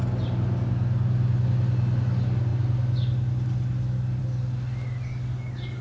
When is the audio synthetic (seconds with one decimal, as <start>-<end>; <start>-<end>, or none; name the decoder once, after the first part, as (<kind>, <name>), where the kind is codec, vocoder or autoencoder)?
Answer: none